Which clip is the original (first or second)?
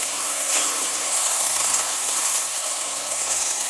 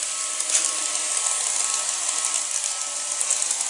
second